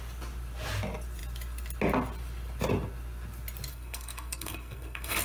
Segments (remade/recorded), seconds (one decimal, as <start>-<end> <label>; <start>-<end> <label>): 0.0-3.7 recorded; 3.7-5.2 remade